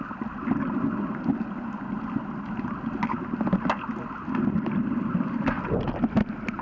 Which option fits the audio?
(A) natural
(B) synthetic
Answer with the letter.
A